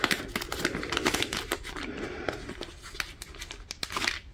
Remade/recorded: recorded